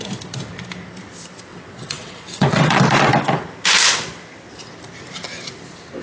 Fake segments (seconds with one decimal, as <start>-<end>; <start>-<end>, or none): 1.5-2.8